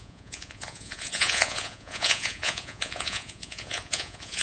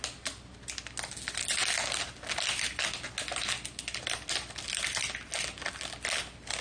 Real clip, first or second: second